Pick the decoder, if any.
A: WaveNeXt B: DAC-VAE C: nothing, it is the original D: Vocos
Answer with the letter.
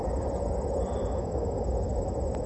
C